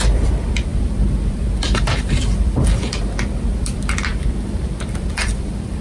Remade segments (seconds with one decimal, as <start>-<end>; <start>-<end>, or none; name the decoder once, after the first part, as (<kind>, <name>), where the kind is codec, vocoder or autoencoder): 0.0-5.8 (vocoder, BigVGAN v2)

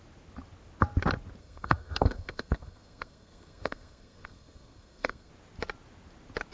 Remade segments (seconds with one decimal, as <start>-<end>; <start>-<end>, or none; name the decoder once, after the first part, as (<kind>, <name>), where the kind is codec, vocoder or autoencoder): 1.4-5.3 (codec, SNAC)

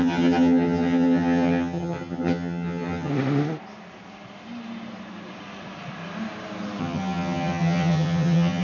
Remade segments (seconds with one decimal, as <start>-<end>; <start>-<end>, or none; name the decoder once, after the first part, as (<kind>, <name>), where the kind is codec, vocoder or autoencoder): 0.0-3.1 (vocoder, HiFi-GAN); 6.8-8.6

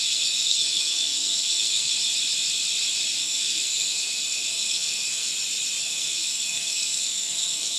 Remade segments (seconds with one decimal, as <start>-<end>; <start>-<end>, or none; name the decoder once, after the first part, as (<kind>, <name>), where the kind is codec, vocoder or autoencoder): 0.0-1.9 (codec, SNAC); 3.2-5.3; 5.8-7.8

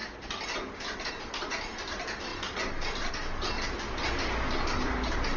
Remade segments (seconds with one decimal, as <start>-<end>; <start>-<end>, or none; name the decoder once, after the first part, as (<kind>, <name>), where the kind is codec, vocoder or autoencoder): none

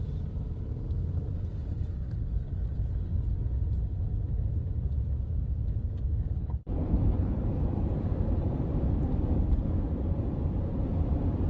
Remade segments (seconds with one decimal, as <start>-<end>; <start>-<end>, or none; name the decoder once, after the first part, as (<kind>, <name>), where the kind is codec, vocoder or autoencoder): 6.4-7.4 (codec, HILCodec)

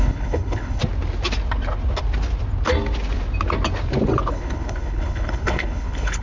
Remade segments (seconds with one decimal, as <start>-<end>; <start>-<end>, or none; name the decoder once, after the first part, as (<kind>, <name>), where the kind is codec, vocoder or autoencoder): 0.0-0.8 (codec, HILCodec); 4.3-6.2